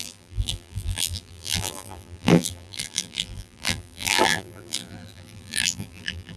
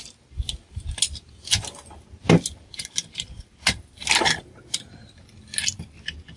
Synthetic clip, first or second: first